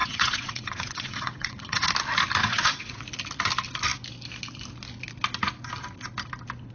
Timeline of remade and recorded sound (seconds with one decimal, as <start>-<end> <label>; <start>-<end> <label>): 0.0-1.9 remade; 1.9-2.4 recorded; 2.4-3.0 remade; 3.0-6.7 recorded